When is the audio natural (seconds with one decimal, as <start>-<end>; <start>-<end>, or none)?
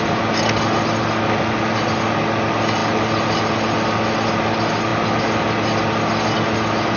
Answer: 0.0-7.0